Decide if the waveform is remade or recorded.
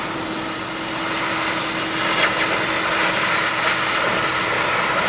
recorded